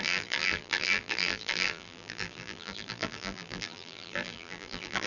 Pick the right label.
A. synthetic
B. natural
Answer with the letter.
A